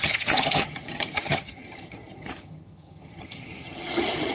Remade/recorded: remade